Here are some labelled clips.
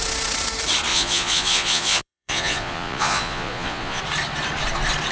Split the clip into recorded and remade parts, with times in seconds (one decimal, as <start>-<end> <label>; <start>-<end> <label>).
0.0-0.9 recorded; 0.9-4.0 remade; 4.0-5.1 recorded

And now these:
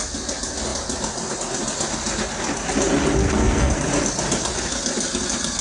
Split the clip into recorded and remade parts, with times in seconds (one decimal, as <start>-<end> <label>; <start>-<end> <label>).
0.0-3.2 recorded; 3.2-3.8 remade; 3.8-5.6 recorded

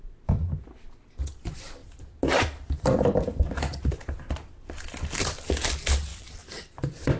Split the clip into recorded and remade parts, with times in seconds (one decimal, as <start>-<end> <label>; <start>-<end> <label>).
0.0-1.8 recorded; 1.8-5.5 remade; 5.5-6.1 recorded; 6.1-7.2 remade

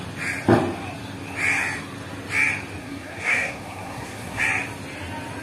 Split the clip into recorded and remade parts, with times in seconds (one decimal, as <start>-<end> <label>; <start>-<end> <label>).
0.0-2.8 recorded; 2.8-4.4 remade; 4.4-5.4 recorded

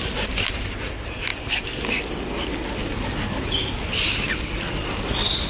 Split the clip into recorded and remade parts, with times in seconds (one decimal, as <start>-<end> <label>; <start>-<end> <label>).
0.0-5.5 recorded

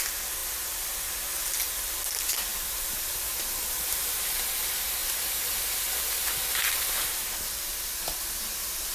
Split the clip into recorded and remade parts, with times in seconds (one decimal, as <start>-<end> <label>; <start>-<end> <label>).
0.0-0.4 recorded; 0.4-1.1 remade; 1.1-2.5 recorded; 2.5-4.0 remade; 4.0-5.0 recorded; 5.0-7.3 remade; 7.3-8.9 recorded

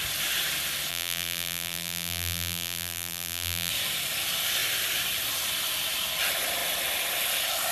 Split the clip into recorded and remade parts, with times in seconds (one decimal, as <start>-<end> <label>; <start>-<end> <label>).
0.0-0.9 recorded; 0.9-3.7 remade; 3.7-7.7 recorded

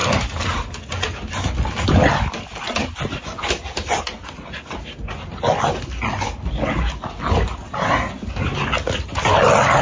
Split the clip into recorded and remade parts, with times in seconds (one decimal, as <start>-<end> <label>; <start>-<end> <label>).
0.0-9.8 recorded